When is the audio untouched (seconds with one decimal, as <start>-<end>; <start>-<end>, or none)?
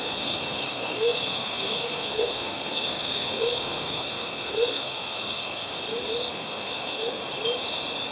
5.7-6.3; 7.2-8.1